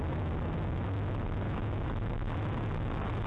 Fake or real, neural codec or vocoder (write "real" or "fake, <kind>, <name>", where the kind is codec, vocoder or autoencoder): real